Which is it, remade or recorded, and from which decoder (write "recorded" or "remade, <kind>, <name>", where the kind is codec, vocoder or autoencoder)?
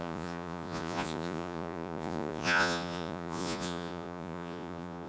remade, vocoder, Vocos